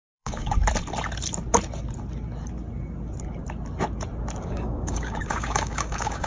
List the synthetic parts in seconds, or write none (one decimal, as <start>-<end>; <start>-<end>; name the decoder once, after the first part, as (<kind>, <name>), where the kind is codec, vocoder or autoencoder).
0.0-0.6 (codec, DAC); 4.4-6.3